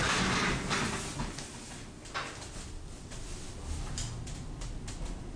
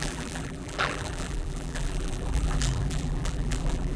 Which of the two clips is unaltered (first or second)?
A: first